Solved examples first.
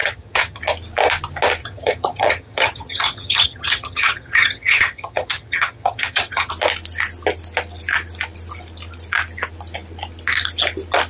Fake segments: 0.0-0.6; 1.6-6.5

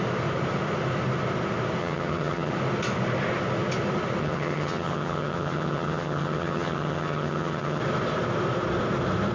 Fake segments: 1.8-2.5; 4.2-7.8

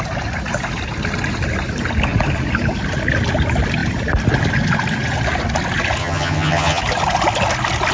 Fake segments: 6.0-6.8

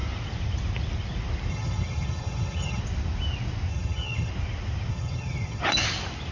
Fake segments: 1.5-2.8; 3.7-4.3; 4.9-5.6

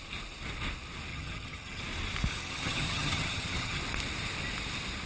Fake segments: 1.1-1.8; 2.3-3.8

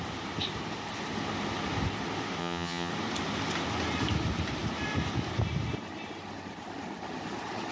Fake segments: 2.4-2.9

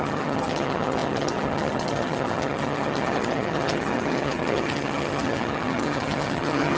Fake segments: 0.0-6.8

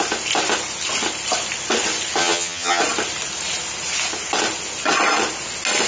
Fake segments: 2.2-2.8